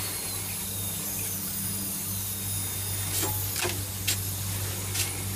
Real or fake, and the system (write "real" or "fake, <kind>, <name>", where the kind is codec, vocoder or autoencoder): real